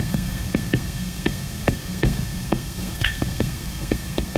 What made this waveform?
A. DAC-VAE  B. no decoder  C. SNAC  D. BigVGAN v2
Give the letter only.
C